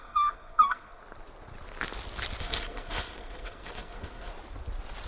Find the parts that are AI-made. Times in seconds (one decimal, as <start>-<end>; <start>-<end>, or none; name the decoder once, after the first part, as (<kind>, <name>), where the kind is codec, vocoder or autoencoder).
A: 0.0-1.0 (codec, SNAC); 2.4-4.3